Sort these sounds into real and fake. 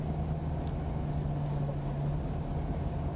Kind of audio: real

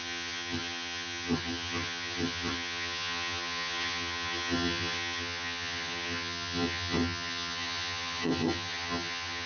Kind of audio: fake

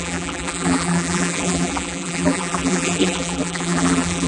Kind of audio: fake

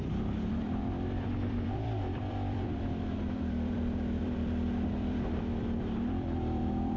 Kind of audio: fake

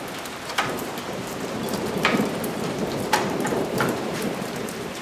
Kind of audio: fake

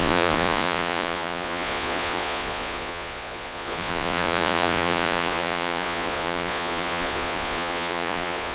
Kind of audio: fake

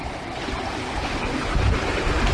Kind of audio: real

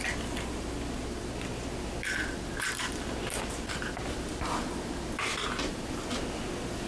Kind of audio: real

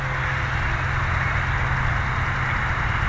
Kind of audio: real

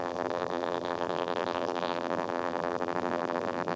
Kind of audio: fake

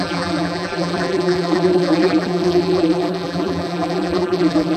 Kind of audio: fake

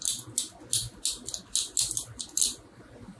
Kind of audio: real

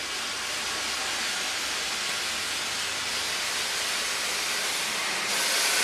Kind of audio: real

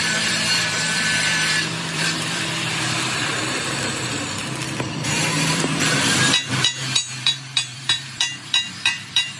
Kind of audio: fake